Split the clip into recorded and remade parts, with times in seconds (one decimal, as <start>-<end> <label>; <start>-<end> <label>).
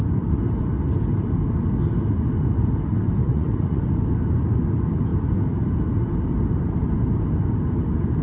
0.0-3.2 recorded; 3.2-3.8 remade; 3.8-8.2 recorded